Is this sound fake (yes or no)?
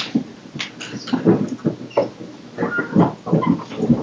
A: no